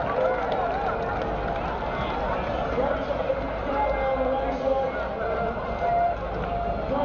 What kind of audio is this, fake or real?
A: real